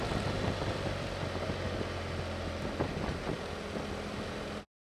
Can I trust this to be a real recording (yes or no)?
yes